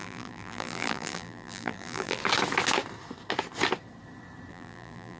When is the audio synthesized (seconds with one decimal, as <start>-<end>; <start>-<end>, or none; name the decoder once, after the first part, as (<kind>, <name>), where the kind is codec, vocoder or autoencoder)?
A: 0.0-2.2 (vocoder, BigVGAN v2); 4.5-5.2